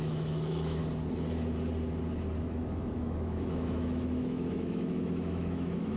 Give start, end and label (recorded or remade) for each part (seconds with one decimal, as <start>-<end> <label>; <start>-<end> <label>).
0.0-0.8 remade; 0.8-2.4 recorded; 2.4-6.0 remade